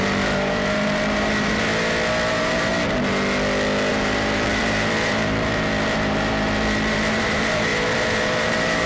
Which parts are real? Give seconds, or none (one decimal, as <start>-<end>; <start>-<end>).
1.7-2.3; 2.7-3.9